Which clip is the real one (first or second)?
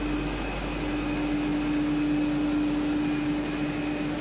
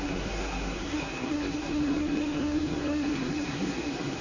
first